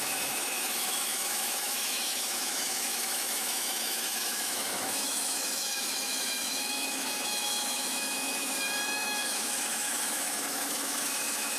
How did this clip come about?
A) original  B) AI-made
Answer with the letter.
B